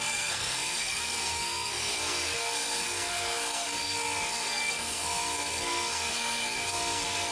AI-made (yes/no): yes